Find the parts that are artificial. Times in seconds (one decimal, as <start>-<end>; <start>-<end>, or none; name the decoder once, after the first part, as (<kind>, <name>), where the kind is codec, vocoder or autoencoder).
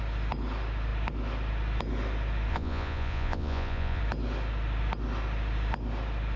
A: 2.5-4.0 (vocoder, Vocos)